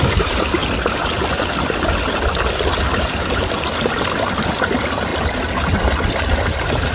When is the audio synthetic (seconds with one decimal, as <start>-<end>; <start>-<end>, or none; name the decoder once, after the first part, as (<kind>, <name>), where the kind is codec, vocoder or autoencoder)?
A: 0.0-0.6 (vocoder, BigVGAN v2); 3.2-5.1